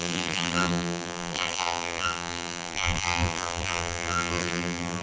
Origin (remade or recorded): remade